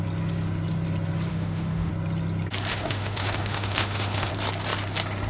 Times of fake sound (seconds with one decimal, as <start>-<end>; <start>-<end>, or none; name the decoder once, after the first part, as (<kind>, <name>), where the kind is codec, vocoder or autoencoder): 1.3-1.9 (autoencoder, DAC-VAE); 2.7-4.3